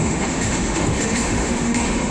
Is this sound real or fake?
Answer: fake